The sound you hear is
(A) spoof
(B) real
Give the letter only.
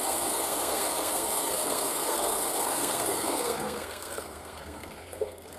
A